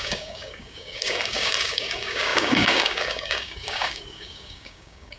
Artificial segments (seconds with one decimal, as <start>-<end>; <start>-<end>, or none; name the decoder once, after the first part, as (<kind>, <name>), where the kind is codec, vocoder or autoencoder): 0.0-5.2 (codec, DAC)